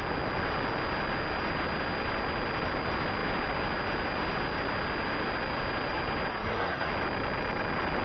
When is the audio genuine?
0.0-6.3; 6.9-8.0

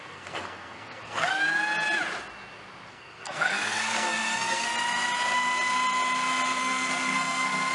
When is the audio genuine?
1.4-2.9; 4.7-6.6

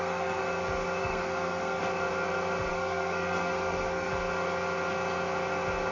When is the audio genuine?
0.4-1.0; 1.8-2.7; 4.1-5.9